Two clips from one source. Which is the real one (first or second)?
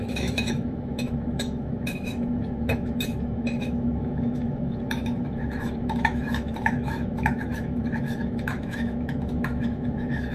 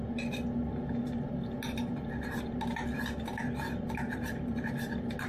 second